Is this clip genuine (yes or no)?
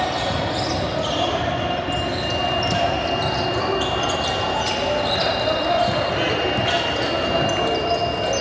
yes